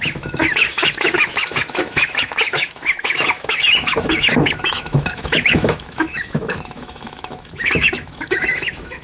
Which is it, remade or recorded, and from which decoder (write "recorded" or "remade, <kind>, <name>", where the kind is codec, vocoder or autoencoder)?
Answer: remade, autoencoder, DAC-VAE